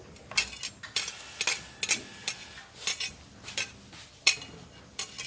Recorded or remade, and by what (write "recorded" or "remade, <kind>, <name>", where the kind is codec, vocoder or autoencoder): recorded